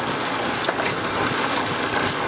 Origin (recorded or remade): recorded